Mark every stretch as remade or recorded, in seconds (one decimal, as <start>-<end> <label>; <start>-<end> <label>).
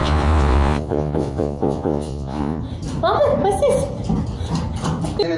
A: 0.0-2.6 remade; 2.6-5.4 recorded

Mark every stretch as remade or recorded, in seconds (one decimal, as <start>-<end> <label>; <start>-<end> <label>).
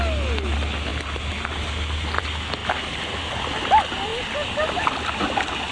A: 0.0-5.7 recorded